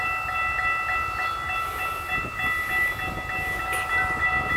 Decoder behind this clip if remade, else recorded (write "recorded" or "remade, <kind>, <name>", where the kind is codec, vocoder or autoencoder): recorded